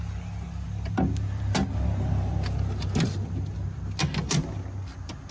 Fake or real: real